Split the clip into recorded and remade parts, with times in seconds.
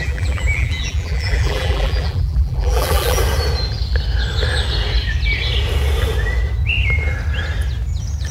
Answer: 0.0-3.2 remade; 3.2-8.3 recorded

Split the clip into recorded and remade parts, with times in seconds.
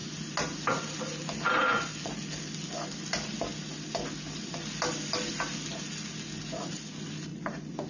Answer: 0.0-7.9 recorded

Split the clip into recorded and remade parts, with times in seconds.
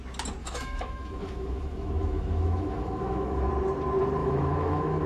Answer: 0.0-0.4 recorded; 0.4-3.5 remade; 3.5-4.2 recorded; 4.2-5.1 remade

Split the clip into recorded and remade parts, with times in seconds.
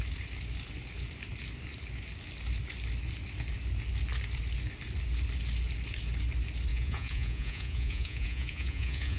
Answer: 0.0-6.7 recorded; 6.7-9.2 remade